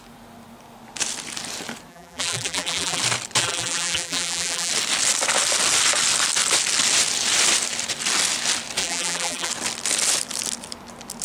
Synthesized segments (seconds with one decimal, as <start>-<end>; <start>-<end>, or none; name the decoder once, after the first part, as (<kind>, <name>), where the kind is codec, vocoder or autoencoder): 1.9-3.0 (vocoder, BigVGAN v2); 3.4-4.7; 8.8-9.5